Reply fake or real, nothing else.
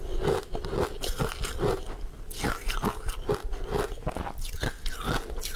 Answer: real